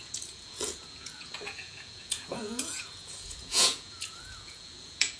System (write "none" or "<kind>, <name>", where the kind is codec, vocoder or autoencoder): vocoder, Vocos